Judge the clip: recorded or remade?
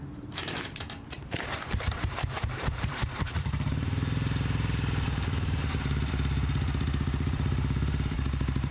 remade